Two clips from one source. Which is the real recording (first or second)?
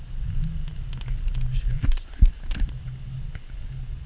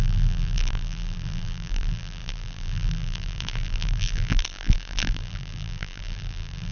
first